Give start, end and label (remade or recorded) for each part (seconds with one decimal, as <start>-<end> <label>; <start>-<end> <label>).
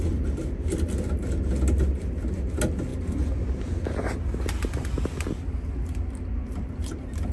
0.0-7.3 recorded